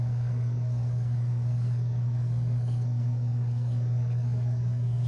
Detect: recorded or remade remade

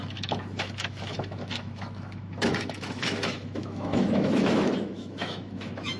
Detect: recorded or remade remade